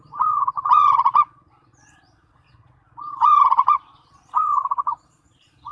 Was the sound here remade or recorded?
remade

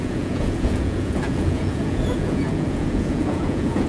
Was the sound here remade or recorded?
remade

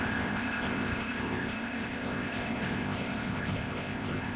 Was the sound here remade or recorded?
remade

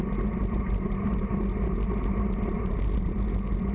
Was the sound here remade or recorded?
recorded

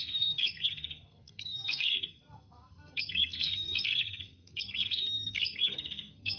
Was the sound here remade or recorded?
remade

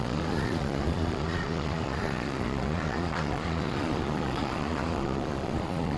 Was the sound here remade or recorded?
remade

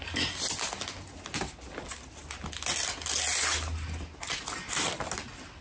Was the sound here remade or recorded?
recorded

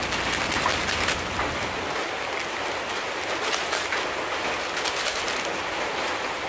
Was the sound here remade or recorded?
recorded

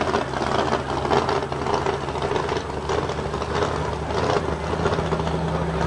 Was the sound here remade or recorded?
recorded